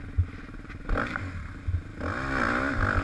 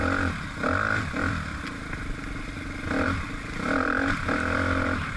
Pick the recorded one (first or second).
first